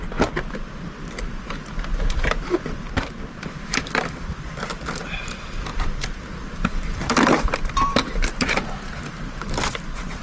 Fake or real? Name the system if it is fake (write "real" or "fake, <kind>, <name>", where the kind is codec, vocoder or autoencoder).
fake, vocoder, BigVGAN v2